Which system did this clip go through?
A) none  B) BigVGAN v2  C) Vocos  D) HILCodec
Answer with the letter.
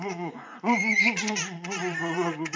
C